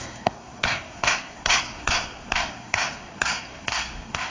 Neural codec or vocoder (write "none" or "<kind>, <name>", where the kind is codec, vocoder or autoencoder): codec, SNAC